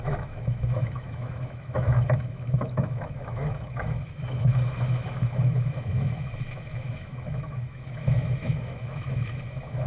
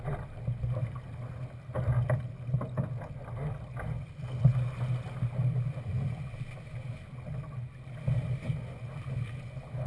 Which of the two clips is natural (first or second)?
second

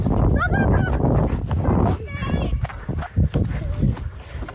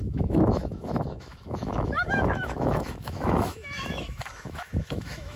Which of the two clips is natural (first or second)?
first